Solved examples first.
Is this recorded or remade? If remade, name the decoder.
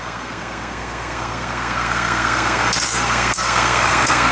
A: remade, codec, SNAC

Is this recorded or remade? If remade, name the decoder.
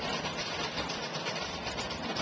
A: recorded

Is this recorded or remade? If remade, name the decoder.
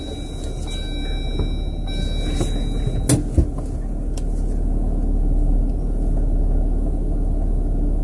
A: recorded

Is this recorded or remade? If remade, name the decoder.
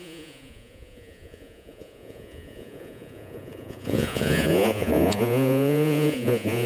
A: remade, vocoder, Vocos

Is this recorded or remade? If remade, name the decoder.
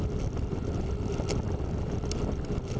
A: recorded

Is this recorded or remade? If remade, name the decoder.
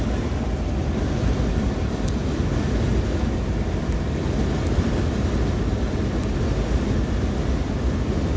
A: recorded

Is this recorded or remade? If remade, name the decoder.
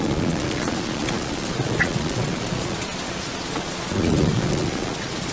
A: remade, vocoder, Vocos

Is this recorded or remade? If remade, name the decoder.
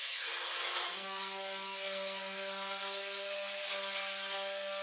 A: remade, codec, SNAC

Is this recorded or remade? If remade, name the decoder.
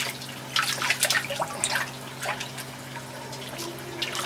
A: recorded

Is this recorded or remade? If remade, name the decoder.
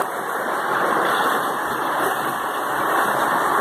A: recorded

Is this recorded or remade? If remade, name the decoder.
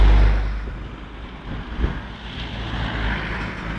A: recorded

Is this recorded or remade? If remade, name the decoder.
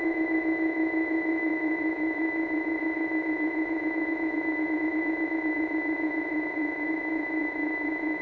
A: remade, vocoder, Vocos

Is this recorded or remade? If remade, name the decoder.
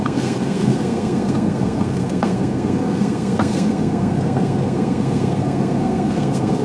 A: remade, codec, SNAC